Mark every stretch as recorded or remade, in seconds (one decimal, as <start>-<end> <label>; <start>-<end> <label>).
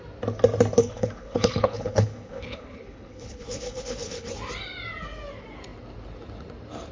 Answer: 0.0-0.8 recorded; 0.8-4.3 remade; 4.3-6.9 recorded